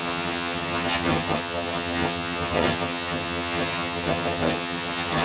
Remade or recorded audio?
remade